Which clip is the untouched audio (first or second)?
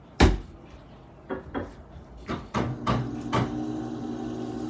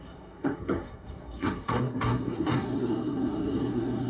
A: first